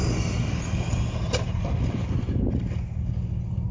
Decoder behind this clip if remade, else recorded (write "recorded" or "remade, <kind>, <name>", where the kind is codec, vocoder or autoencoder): recorded